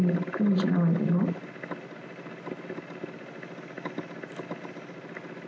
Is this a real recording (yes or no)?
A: yes